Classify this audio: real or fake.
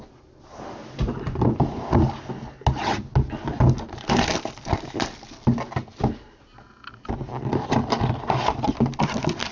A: real